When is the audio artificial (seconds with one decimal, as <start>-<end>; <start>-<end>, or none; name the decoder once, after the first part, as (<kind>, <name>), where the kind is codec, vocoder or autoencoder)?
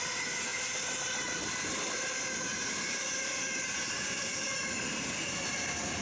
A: none